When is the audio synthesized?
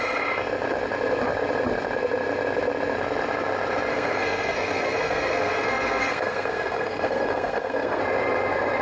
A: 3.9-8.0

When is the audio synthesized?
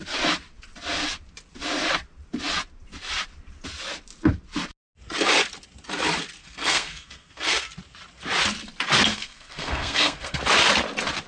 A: 6.4-7.7; 9.1-10.4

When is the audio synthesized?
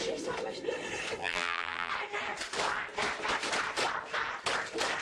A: 1.2-1.9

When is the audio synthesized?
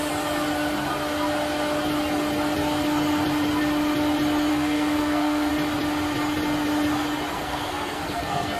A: 4.5-5.5; 7.3-8.6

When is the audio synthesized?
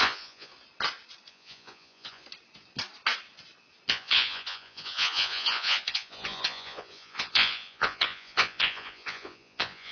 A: 0.0-0.5; 1.3-2.2; 3.9-9.9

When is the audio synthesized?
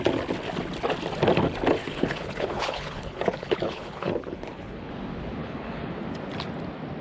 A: 1.8-4.9; 5.4-5.9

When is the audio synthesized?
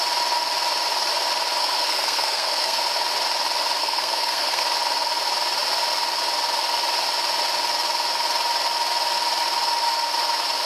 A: 1.6-2.8; 3.8-4.6